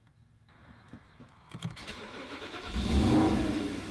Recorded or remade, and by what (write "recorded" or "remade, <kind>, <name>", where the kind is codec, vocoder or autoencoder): remade, autoencoder, DAC-VAE